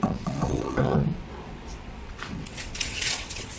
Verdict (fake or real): fake